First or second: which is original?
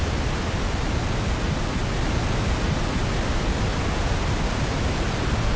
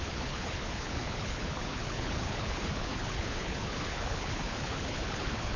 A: first